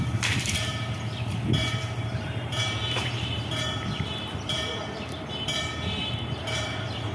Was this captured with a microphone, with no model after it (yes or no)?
no